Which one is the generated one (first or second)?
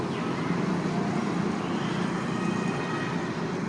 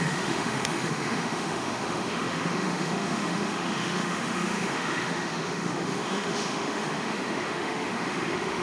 second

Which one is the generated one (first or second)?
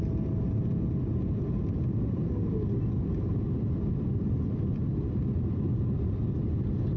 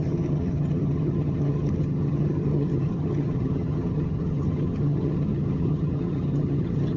second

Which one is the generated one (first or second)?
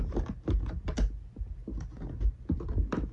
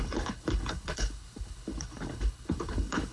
second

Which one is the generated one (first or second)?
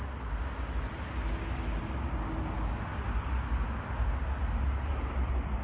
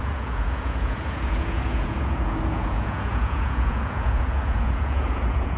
second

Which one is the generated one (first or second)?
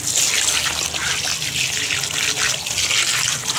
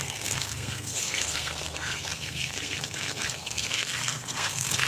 second